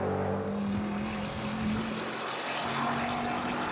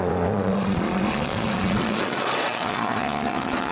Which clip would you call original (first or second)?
first